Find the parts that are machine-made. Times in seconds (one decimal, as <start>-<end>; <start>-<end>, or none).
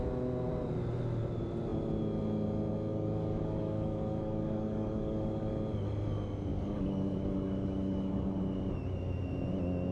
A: 2.9-5.5; 6.5-8.4